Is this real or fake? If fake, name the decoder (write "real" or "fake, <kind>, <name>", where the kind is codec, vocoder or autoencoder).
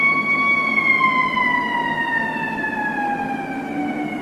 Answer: real